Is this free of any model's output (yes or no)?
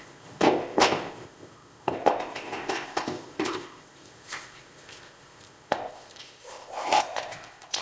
no